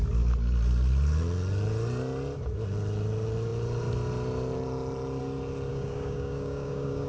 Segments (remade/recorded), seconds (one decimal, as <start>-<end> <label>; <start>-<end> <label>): 0.0-5.7 recorded; 5.7-7.1 remade